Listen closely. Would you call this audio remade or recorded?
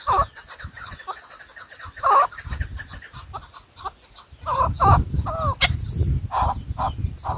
recorded